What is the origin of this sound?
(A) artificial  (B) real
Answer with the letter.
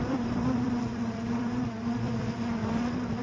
A